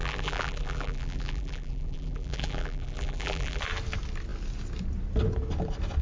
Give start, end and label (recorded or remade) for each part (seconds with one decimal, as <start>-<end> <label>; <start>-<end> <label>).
0.0-3.6 remade; 3.6-6.0 recorded